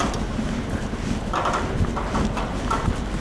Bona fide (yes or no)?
yes